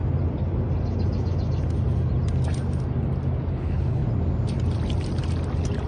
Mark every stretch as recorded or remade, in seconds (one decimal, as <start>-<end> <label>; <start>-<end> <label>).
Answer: 0.0-3.5 recorded; 3.5-4.0 remade; 4.0-5.9 recorded